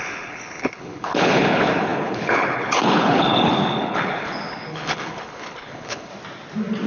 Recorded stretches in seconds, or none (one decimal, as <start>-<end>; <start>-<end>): 6.1-6.9